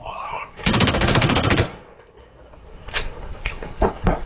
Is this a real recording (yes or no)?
no